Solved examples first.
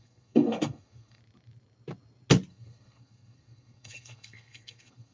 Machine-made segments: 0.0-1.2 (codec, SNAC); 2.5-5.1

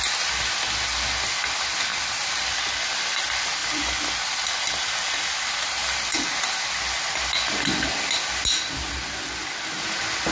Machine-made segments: none

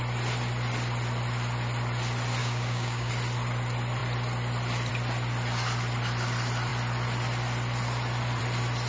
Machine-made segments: 2.4-3.1 (codec, DAC)

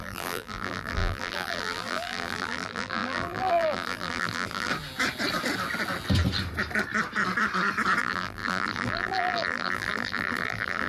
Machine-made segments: 0.0-4.7 (vocoder, BigVGAN v2); 8.0-10.9

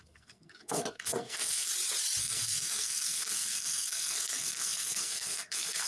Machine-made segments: 0.0-1.7 (codec, SNAC); 2.2-5.9

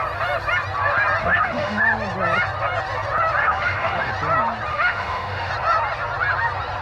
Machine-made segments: 1.2-1.8 (autoencoder, DAC-VAE); 3.4-4.1; 4.7-5.5